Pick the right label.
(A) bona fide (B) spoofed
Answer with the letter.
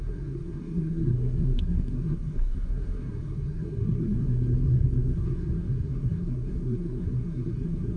B